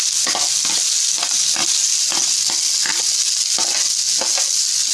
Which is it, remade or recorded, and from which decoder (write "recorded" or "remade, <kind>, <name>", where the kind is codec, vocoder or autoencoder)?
recorded